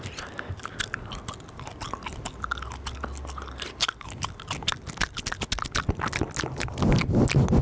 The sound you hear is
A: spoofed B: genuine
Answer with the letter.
B